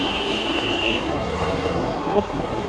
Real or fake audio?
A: fake